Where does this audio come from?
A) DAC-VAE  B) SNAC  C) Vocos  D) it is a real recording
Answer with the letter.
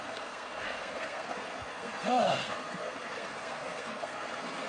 B